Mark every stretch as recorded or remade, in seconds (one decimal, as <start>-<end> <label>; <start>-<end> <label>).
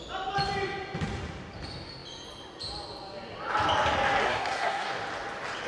0.0-4.2 recorded; 4.2-4.9 remade; 4.9-5.7 recorded